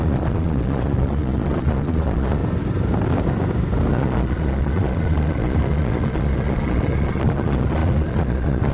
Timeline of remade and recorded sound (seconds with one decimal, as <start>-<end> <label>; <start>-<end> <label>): 0.0-2.4 remade; 2.4-3.9 recorded; 3.9-8.7 remade